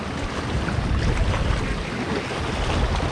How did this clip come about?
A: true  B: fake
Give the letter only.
A